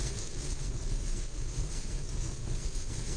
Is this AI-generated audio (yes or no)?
yes